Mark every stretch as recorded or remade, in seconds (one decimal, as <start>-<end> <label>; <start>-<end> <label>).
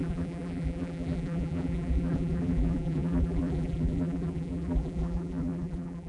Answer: 0.0-6.1 remade